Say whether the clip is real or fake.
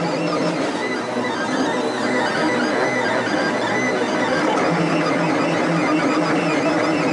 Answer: real